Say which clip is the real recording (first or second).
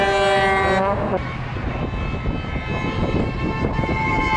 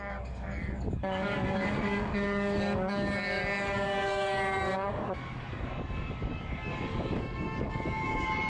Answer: first